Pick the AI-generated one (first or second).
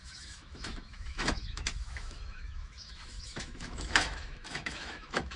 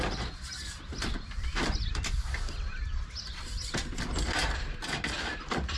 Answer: first